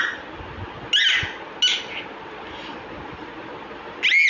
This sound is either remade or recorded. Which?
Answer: recorded